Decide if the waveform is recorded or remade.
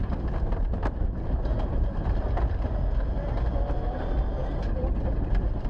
recorded